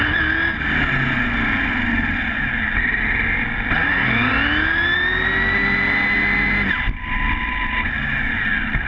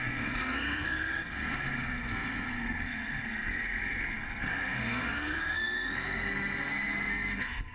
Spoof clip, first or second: second